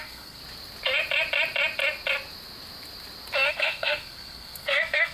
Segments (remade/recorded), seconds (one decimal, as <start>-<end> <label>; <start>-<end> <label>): 0.0-0.4 remade; 0.4-3.5 recorded; 3.5-5.1 remade